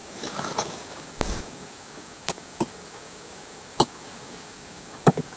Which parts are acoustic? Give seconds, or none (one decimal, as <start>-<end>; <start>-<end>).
none